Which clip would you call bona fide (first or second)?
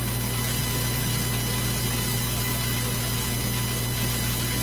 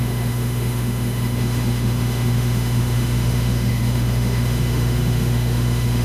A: first